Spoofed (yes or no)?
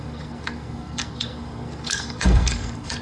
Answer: yes